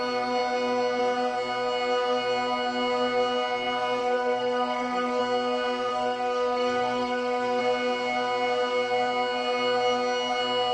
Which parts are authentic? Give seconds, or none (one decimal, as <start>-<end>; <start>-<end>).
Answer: 0.0-4.0; 5.2-5.9; 7.6-10.7